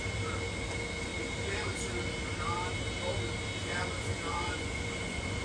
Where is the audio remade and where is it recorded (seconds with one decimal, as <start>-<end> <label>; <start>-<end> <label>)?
0.0-3.6 recorded; 3.6-5.4 remade